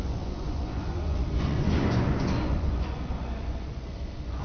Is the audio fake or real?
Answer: fake